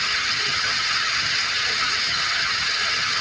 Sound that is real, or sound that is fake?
fake